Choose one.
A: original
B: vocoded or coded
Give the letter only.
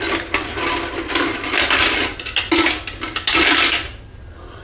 A